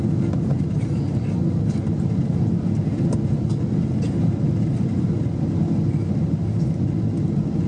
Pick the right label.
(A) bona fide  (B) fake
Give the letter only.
B